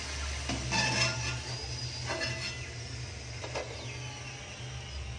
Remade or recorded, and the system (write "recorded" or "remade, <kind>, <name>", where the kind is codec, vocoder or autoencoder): recorded